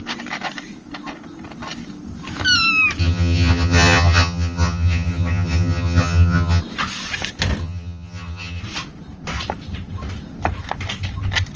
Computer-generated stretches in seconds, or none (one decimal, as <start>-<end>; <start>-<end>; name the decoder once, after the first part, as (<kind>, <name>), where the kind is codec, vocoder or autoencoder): 3.0-6.6 (vocoder, HiFi-GAN); 7.6-8.6